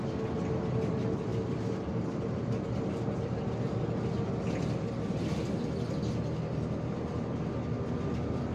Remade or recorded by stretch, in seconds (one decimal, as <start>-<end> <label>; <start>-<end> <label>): 0.0-8.5 recorded